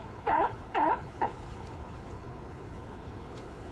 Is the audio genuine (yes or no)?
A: no